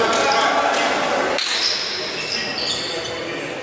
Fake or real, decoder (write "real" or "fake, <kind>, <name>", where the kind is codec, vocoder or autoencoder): real